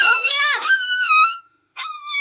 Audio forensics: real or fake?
fake